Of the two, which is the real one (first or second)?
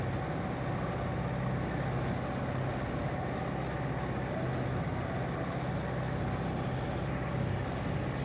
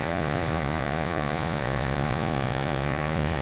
first